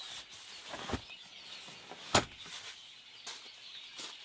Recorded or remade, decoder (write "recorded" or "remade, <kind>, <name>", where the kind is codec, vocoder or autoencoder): recorded